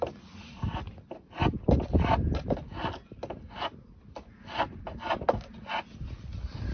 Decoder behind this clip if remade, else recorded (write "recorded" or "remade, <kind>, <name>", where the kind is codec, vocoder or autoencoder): recorded